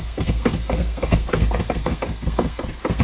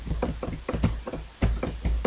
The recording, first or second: second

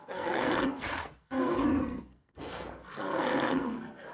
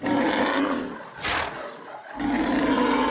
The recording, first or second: second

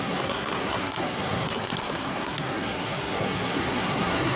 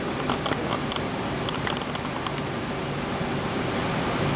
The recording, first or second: second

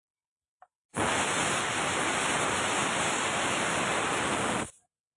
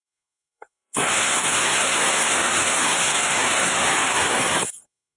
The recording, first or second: first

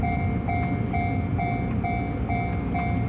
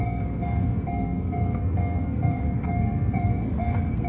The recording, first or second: first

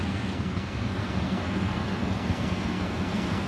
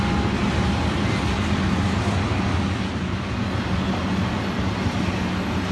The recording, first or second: second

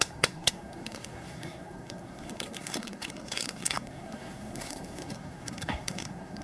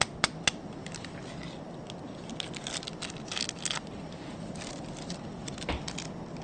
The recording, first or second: second